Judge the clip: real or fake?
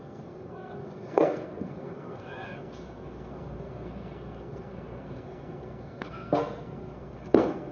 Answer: fake